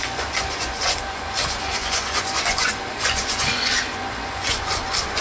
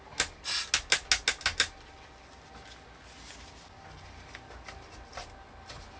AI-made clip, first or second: first